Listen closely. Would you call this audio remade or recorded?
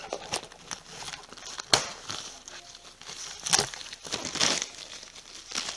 recorded